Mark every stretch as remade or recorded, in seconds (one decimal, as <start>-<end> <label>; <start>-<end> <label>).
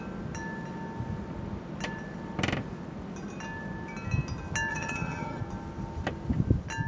0.0-4.7 recorded; 4.7-5.4 remade; 5.4-6.9 recorded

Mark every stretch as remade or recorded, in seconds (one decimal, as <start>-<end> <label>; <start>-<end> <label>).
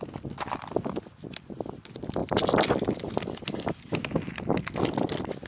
0.0-5.5 recorded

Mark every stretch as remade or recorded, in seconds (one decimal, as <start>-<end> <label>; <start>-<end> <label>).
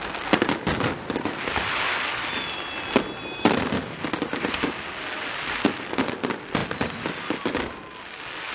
0.0-8.5 recorded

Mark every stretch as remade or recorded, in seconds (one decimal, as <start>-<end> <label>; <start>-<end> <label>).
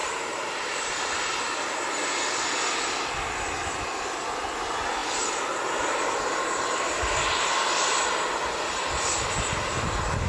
0.0-1.4 remade; 1.4-5.0 recorded; 5.0-7.6 remade; 7.6-10.3 recorded